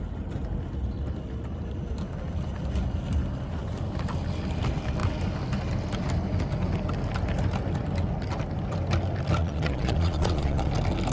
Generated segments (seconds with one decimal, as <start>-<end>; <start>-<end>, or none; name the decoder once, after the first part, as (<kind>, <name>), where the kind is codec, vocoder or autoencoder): 9.4-10.7 (vocoder, Vocos)